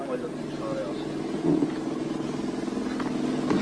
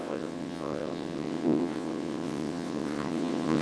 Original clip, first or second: first